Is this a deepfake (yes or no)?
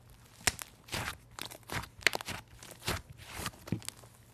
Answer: no